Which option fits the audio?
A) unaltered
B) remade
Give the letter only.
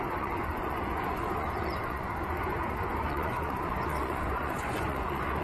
B